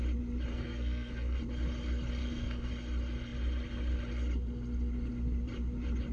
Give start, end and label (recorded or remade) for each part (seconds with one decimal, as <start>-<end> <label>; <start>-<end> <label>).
0.0-0.5 recorded; 0.5-1.4 remade; 1.4-2.2 recorded; 2.2-2.7 remade; 2.7-6.1 recorded